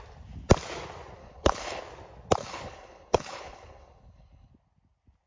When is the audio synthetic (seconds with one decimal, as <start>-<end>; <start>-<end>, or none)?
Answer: 1.2-1.8; 2.4-4.5

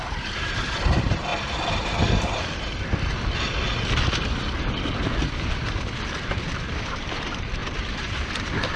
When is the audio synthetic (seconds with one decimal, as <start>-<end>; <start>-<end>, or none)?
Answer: 0.0-1.3; 6.2-8.8

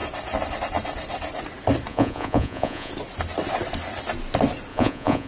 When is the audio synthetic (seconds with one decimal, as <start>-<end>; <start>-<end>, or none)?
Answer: 1.9-2.9; 4.7-5.3